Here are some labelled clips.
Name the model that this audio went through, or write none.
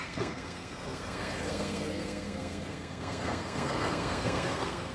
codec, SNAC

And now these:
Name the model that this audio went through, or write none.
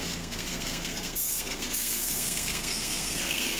codec, SNAC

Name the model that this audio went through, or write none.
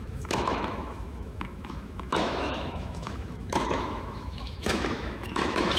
autoencoder, DAC-VAE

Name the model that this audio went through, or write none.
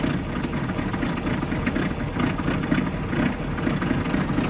none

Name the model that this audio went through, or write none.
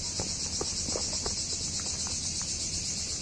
none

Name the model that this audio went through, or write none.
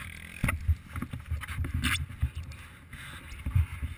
none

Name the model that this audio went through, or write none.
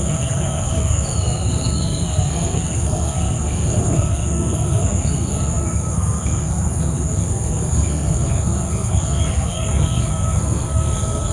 codec, SNAC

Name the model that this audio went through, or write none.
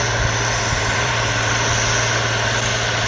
vocoder, BigVGAN v2